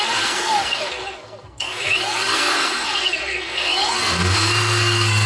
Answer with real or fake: fake